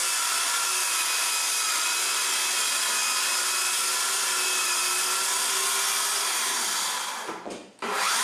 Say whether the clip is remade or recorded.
recorded